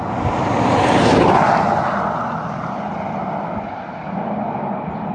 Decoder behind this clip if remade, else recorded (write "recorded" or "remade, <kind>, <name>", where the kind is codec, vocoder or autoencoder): recorded